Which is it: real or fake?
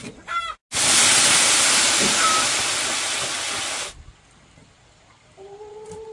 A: real